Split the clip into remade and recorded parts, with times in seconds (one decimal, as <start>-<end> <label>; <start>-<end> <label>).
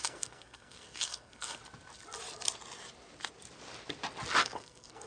0.0-1.6 remade; 1.6-4.4 recorded; 4.4-5.1 remade